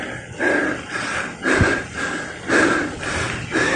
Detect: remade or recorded recorded